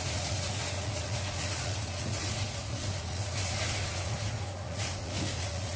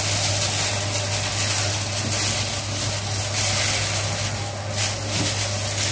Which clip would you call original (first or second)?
second